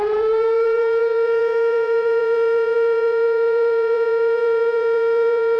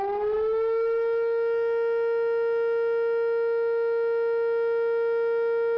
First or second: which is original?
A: second